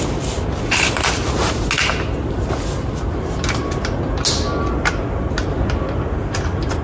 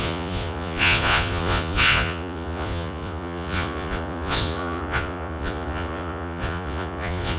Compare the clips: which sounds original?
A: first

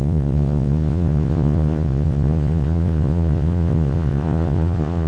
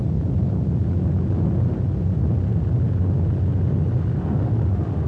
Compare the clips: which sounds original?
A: second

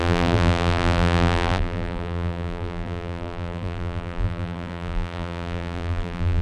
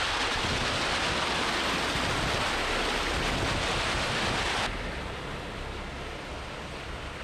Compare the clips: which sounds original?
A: second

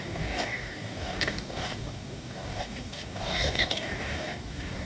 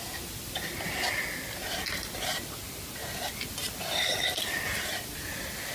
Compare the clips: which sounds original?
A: second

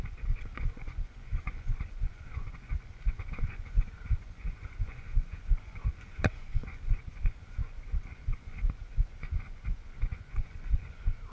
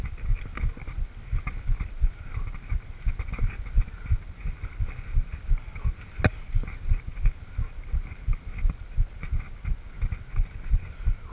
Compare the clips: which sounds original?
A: second